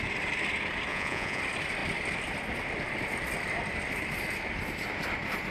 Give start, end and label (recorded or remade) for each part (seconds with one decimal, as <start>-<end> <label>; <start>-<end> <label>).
0.0-0.9 recorded; 0.9-1.4 remade; 1.4-5.5 recorded